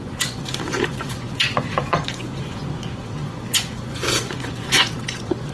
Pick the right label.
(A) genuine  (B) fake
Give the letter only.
B